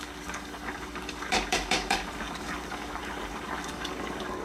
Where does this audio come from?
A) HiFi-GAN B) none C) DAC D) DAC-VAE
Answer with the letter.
C